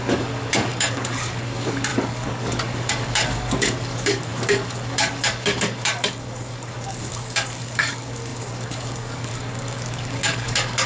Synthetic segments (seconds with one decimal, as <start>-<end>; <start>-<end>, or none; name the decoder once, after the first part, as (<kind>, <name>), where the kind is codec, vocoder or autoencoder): 0.0-10.9 (codec, DAC)